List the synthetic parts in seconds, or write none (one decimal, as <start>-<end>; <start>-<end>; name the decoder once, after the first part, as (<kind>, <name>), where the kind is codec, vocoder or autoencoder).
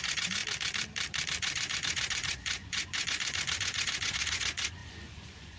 0.0-0.4 (vocoder, Vocos); 1.4-5.6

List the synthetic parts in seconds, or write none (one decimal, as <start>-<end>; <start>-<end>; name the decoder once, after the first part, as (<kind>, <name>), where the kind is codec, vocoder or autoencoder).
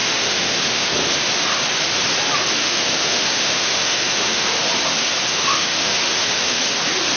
0.0-0.9 (autoencoder, DAC-VAE); 2.6-4.6; 5.3-6.6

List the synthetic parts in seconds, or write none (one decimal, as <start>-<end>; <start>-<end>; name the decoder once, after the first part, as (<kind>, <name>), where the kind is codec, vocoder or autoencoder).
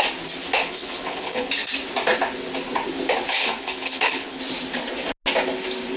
0.6-1.5 (codec, HILCodec); 3.4-4.4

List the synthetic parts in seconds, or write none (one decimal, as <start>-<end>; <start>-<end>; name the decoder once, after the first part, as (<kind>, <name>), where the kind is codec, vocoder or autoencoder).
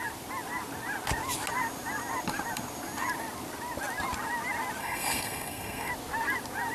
4.8-5.9 (codec, SNAC)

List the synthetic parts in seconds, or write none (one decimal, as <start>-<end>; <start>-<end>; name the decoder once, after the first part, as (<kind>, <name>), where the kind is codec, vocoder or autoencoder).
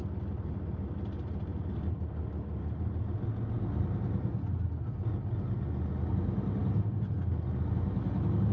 none